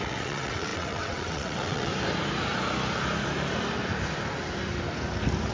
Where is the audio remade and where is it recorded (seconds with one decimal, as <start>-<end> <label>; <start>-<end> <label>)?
0.0-1.9 remade; 1.9-5.5 recorded